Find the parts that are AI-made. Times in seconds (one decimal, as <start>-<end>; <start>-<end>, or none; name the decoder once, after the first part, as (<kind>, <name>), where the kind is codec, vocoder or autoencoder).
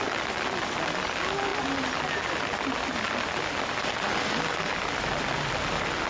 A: none